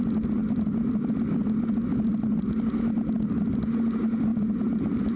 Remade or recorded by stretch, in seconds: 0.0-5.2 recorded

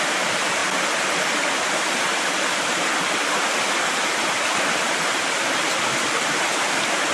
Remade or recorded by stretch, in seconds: 0.0-7.1 recorded